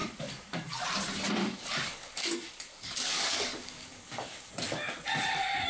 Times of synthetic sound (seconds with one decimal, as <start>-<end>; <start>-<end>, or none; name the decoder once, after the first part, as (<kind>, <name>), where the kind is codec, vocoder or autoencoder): 0.0-0.8 (codec, DAC); 1.4-4.5